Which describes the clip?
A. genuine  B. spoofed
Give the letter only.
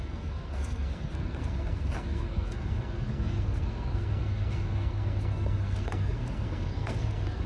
B